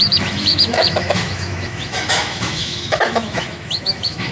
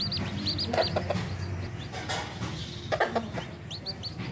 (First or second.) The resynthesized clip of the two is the first